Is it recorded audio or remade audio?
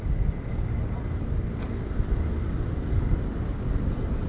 recorded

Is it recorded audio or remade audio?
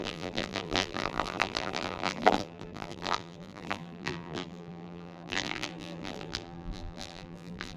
remade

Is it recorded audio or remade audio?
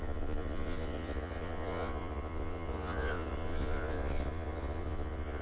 remade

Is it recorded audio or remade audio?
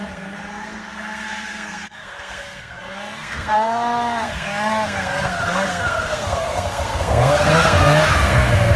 remade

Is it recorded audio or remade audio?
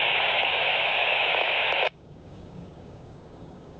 remade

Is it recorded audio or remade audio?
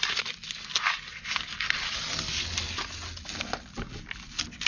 recorded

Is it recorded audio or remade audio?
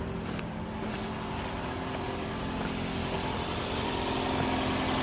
recorded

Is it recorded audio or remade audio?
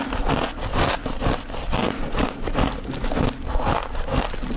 recorded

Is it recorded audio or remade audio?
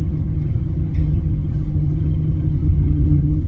remade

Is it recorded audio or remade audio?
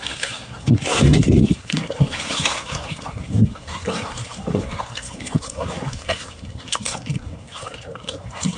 remade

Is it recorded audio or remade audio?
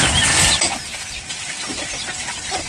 recorded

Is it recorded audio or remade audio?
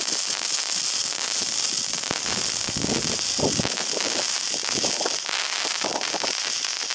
recorded